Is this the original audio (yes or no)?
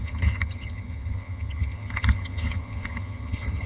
no